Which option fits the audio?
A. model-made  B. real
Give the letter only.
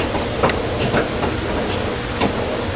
B